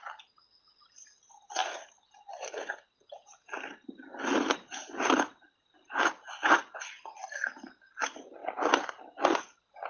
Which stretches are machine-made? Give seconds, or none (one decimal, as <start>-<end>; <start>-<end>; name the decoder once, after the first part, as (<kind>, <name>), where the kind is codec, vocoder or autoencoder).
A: 1.6-6.0 (vocoder, BigVGAN v2)